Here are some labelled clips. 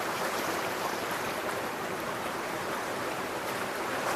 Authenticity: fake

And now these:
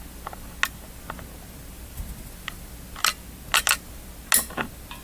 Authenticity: real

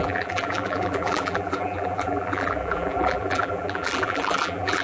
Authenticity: fake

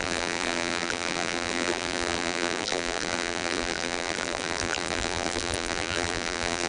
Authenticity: fake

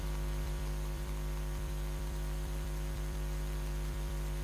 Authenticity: fake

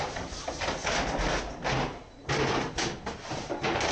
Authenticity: real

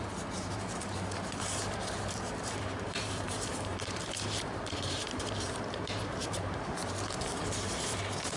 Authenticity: fake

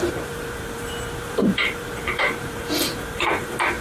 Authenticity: fake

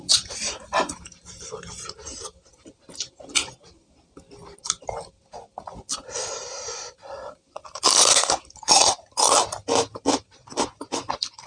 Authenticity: real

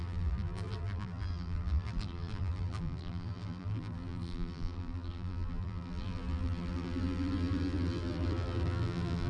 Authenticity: fake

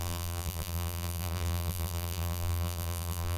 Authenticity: fake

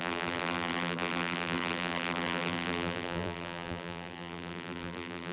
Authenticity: fake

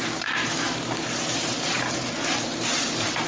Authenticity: fake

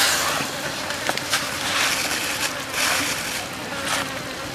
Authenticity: real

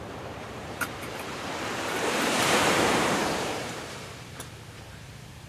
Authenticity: fake